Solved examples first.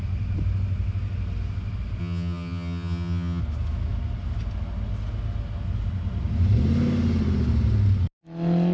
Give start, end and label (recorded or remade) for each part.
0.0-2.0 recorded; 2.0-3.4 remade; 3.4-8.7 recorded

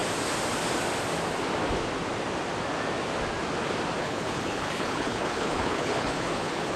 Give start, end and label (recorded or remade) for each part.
0.0-4.0 recorded; 4.0-6.8 remade

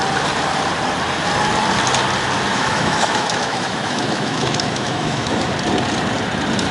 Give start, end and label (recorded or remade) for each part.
0.0-2.5 recorded; 2.5-5.5 remade; 5.5-6.7 recorded

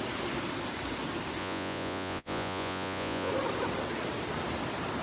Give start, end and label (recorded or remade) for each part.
0.0-1.4 recorded; 1.4-3.3 remade; 3.3-5.0 recorded

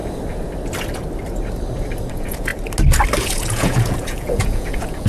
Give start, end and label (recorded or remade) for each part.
0.0-2.1 recorded; 2.1-2.5 remade; 2.5-3.2 recorded; 3.2-5.1 remade

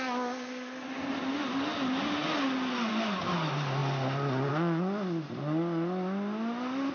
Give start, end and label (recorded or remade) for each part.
0.0-6.9 recorded